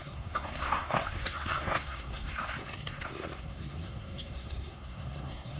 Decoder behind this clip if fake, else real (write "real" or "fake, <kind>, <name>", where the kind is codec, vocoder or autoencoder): fake, codec, SNAC